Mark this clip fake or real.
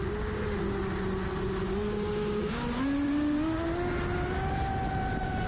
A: real